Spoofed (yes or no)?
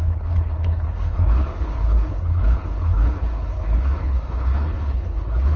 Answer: yes